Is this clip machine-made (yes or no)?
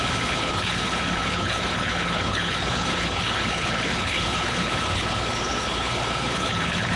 yes